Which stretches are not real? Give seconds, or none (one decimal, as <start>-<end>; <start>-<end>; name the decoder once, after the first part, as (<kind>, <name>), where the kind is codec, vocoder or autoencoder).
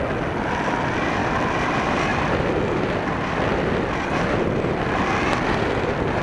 none